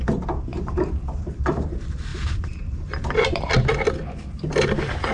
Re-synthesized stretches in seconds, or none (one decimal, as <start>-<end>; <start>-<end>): 0.5-1.2; 2.1-3.4